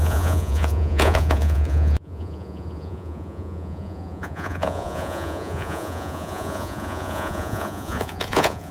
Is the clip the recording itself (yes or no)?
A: no